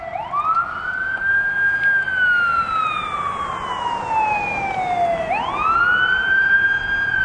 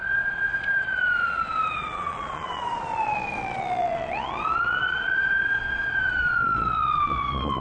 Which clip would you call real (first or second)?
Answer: first